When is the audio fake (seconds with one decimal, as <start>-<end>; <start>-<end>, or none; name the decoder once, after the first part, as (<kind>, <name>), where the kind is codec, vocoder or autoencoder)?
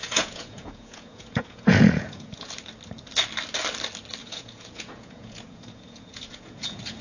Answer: 0.0-2.5 (vocoder, Vocos); 4.2-7.0